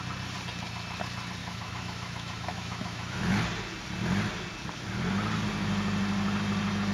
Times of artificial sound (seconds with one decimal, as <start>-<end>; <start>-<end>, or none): 1.4-3.4